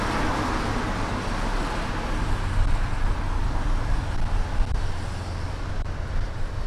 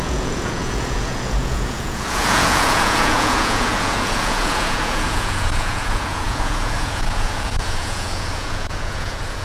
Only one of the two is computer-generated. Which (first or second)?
second